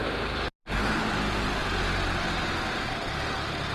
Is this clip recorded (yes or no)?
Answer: yes